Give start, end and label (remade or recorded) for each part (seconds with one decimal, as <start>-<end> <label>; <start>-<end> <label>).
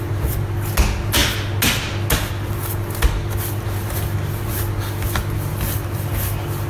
0.0-5.5 recorded; 5.5-6.1 remade; 6.1-6.7 recorded